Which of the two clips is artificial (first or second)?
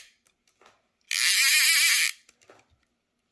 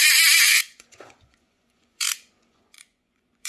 second